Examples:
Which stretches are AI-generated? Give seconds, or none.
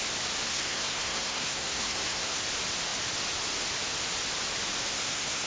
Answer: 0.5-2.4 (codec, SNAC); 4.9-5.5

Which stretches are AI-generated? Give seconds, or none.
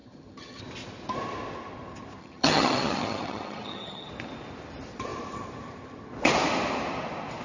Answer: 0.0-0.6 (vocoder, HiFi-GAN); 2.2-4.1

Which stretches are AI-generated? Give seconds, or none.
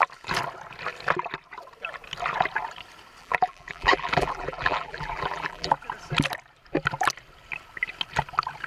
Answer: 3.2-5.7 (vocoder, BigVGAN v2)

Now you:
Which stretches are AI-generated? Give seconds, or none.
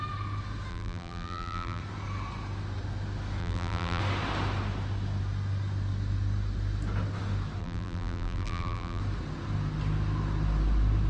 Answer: 0.7-1.8 (vocoder, BigVGAN v2); 3.4-4.0; 7.6-9.0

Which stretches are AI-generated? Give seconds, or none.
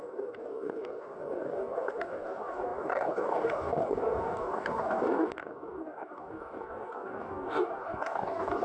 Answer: 0.0-8.6 (codec, DAC)